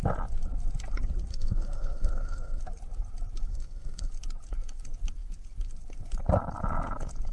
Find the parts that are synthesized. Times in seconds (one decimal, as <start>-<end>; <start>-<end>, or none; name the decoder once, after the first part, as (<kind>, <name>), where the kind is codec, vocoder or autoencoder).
1.3-2.6 (codec, SNAC); 3.5-4.1